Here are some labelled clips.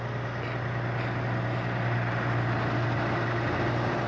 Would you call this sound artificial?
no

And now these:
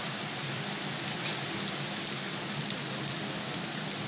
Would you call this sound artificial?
no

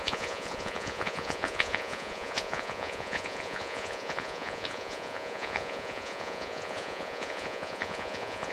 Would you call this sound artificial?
yes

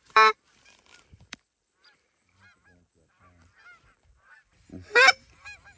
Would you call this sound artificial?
yes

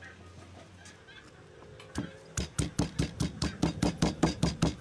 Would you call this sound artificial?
no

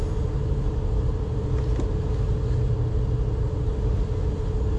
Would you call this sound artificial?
no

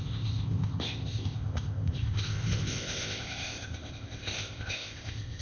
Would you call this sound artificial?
yes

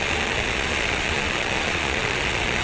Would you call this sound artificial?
yes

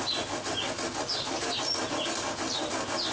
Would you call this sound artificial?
no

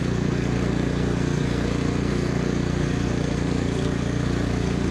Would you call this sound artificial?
yes